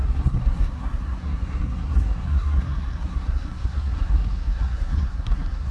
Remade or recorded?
remade